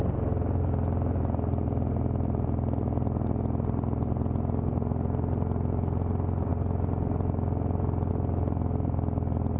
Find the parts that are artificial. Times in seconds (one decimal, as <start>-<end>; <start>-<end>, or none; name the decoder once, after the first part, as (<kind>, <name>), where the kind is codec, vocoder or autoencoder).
none

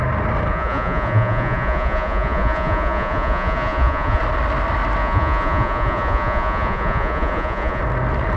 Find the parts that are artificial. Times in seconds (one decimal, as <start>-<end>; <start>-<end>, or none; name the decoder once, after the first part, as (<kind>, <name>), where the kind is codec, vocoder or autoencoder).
0.5-4.2 (vocoder, Vocos); 5.0-7.8

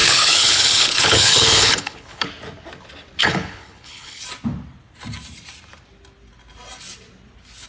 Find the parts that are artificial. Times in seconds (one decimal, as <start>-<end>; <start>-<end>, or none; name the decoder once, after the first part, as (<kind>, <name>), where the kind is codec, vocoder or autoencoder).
0.0-2.3 (codec, HILCodec); 3.2-4.2

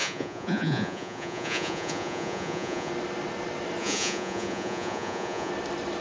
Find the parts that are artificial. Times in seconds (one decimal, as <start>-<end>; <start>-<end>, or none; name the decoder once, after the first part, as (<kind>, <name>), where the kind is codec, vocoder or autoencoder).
0.0-2.9 (vocoder, Vocos); 3.8-5.5

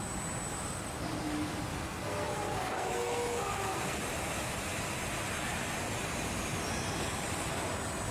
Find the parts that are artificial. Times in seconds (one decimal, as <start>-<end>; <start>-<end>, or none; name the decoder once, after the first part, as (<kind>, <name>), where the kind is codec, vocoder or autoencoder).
1.7-4.0 (codec, SNAC)

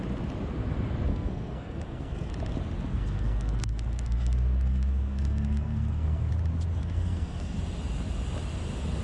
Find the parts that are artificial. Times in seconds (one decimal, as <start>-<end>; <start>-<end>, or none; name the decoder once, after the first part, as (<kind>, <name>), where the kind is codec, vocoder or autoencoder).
1.1-2.3 (codec, SNAC); 2.9-6.3; 6.8-7.6